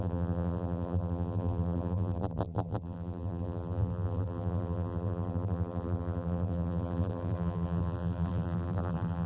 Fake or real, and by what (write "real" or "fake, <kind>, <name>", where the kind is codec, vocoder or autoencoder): fake, vocoder, BigVGAN v2